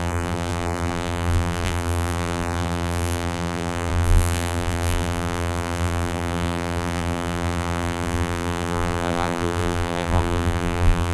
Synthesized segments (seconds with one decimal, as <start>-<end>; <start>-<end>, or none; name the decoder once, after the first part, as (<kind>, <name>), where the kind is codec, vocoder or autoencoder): 0.0-11.1 (vocoder, BigVGAN v2)